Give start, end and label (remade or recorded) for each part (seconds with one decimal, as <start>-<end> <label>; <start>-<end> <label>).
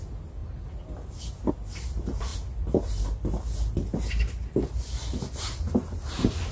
0.0-6.5 recorded